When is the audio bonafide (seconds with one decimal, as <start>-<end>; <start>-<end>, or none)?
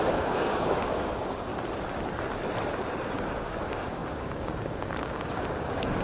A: 1.5-3.1